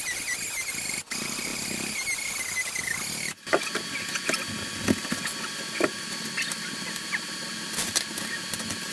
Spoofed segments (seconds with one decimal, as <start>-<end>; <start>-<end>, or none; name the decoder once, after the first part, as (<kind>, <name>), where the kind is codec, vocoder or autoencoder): none